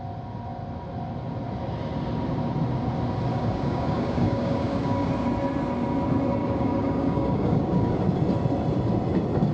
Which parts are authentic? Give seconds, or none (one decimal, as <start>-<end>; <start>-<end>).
0.0-3.3; 5.1-6.4; 7.9-9.5